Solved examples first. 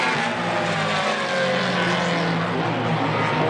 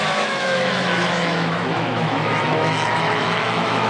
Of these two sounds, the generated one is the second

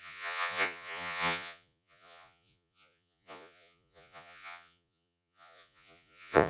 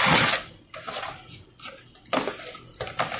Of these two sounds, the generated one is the first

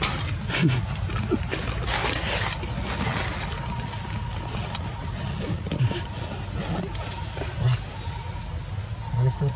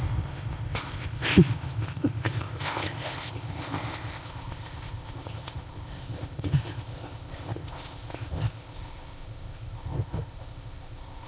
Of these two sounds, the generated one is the second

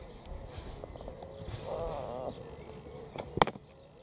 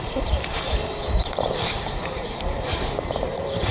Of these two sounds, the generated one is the second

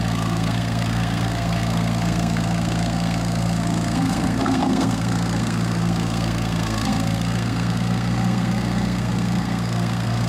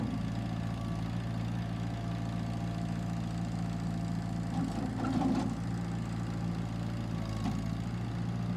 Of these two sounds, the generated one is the first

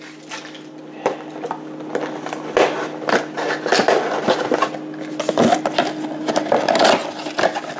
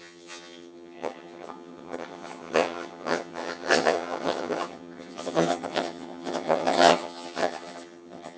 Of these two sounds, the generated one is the second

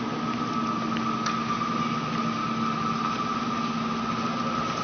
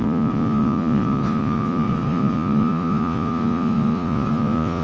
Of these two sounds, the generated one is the second